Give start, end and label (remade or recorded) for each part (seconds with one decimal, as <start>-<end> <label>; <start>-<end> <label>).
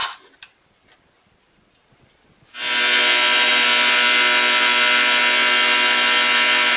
0.0-6.8 recorded